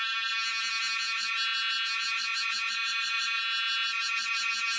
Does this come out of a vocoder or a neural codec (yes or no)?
no